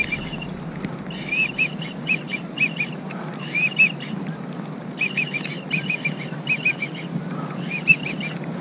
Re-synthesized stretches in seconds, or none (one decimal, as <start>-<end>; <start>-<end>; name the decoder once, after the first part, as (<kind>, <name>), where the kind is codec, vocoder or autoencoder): none

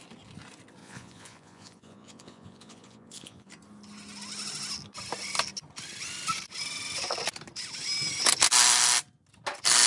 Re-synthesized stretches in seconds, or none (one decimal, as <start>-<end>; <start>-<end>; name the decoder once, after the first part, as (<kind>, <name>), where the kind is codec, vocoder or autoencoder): 0.8-3.5 (vocoder, Vocos)